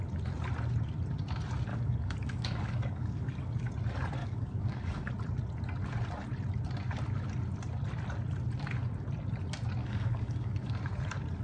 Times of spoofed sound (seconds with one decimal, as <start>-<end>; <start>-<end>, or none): 1.7-3.7; 4.2-5.1; 9.8-10.7

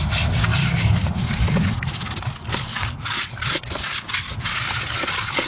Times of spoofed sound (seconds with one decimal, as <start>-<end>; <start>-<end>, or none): 0.6-3.9